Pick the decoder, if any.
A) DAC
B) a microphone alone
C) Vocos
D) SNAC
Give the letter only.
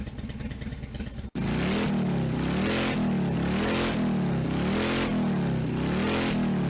B